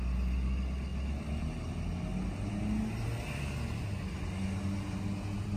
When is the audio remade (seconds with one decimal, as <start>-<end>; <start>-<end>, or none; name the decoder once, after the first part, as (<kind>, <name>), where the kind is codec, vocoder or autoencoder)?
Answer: none